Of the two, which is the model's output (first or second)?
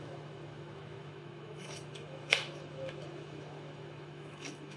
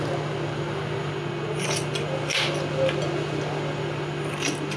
first